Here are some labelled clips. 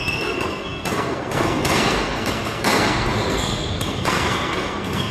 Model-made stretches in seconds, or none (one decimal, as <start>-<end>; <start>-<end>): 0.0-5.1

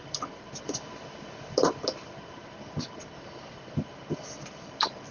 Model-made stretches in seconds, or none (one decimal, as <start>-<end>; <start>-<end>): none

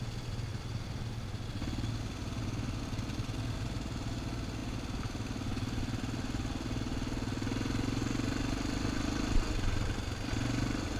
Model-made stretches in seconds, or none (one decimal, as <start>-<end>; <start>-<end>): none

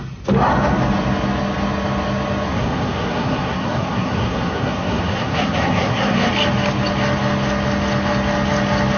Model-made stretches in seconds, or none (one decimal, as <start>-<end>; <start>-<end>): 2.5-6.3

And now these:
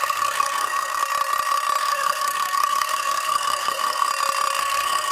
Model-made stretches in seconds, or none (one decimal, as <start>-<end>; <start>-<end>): 0.0-1.0; 1.8-4.1; 4.6-5.1

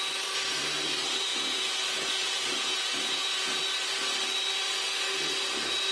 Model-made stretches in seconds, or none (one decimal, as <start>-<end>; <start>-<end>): 1.3-3.6

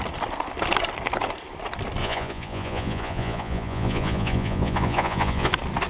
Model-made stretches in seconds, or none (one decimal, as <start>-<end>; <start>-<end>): 2.0-5.5